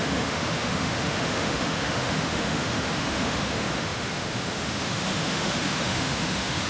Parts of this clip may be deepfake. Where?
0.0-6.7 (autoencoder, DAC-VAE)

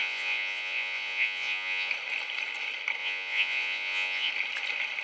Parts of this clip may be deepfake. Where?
0.0-1.9 (vocoder, Vocos); 3.0-4.3

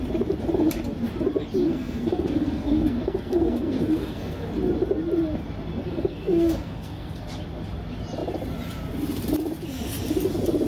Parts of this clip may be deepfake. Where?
1.6-4.5 (codec, SNAC); 5.8-7.2

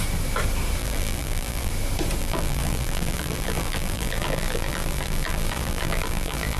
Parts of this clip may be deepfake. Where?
0.8-1.7 (vocoder, BigVGAN v2); 2.2-6.6

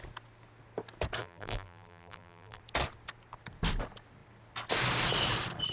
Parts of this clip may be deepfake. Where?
1.2-2.6 (vocoder, BigVGAN v2)

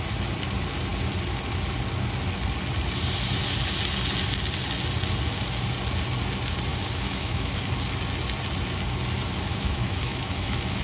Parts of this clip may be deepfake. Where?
6.7-7.7 (autoencoder, DAC-VAE); 9.5-10.8